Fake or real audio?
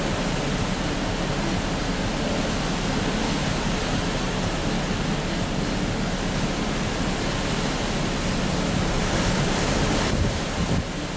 real